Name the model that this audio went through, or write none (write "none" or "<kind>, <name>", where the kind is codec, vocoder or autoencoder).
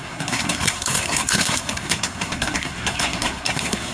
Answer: codec, SNAC